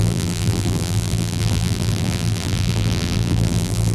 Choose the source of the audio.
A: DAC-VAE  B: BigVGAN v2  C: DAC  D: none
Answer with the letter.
B